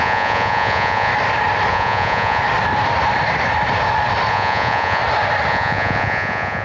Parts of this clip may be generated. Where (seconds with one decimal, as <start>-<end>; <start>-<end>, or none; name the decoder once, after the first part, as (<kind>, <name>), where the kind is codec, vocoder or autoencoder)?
0.0-1.1 (vocoder, Vocos); 1.7-2.4; 4.3-5.0; 5.5-6.6